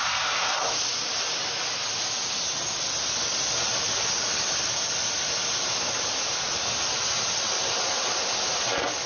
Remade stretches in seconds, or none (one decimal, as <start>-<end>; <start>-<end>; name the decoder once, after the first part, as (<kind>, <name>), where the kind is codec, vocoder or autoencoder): none